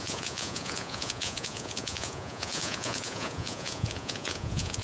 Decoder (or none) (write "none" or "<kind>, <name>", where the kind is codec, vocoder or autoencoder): vocoder, Vocos